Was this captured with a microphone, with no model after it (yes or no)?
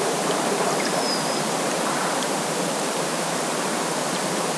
no